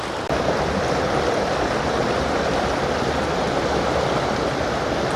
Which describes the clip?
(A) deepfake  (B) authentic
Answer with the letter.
B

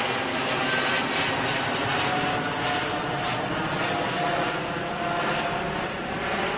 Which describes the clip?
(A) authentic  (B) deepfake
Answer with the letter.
A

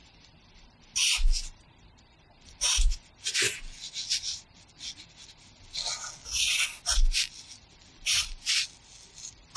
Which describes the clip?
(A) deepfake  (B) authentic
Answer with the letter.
B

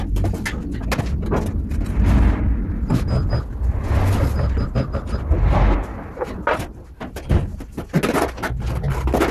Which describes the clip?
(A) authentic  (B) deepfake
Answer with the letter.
A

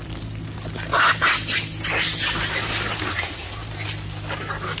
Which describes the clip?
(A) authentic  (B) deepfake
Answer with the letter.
A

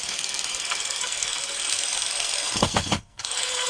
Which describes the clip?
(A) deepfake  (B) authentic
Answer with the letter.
A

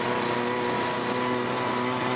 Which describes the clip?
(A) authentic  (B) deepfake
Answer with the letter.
A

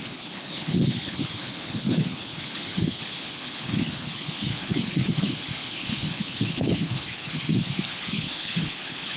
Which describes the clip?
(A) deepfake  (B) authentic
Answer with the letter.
A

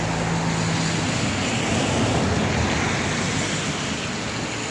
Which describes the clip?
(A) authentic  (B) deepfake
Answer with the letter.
A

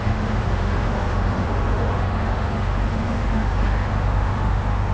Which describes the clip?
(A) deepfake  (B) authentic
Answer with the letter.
A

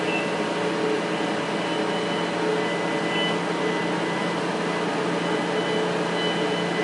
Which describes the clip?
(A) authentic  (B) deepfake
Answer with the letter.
A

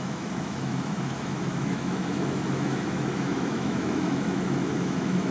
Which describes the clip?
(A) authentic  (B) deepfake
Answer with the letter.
B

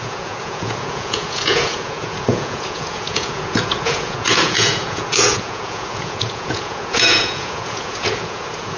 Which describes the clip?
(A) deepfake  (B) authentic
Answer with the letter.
A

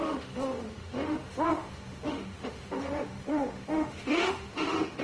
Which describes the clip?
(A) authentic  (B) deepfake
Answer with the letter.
B